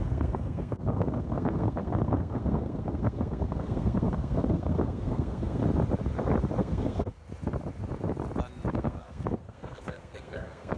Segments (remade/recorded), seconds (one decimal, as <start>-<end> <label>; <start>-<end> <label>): 0.0-5.6 remade; 5.6-6.6 recorded; 6.6-7.2 remade; 7.2-8.7 recorded; 8.7-10.8 remade